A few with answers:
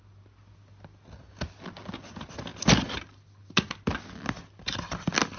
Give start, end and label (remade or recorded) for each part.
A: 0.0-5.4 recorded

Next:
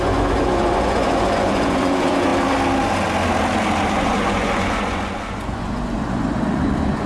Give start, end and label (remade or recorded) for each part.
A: 0.0-2.3 remade; 2.3-3.9 recorded; 3.9-7.1 remade